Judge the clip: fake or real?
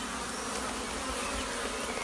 real